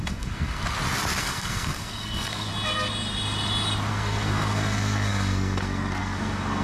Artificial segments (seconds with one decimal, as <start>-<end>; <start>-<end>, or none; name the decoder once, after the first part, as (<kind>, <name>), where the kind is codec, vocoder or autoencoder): 0.0-0.6 (codec, SNAC); 1.2-2.5; 3.9-6.6